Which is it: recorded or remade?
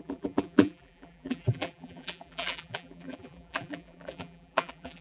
remade